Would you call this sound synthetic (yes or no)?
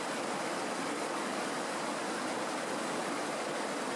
no